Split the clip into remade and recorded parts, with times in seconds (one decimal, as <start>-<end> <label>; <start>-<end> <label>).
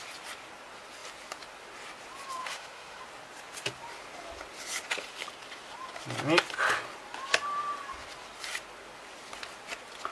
0.0-2.4 recorded; 2.4-3.0 remade; 3.0-10.1 recorded